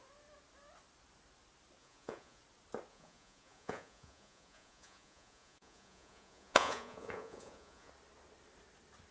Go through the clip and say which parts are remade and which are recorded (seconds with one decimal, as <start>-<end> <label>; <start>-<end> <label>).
0.0-1.8 recorded; 1.8-2.4 remade; 2.4-2.9 recorded; 2.9-7.9 remade; 7.9-9.1 recorded